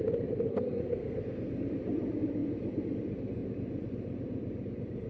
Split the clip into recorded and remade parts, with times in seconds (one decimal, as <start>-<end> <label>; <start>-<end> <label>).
0.0-0.5 recorded; 0.5-1.5 remade; 1.5-5.1 recorded